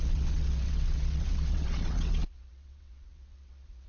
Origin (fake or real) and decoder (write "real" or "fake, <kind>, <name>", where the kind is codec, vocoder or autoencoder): fake, vocoder, WaveNeXt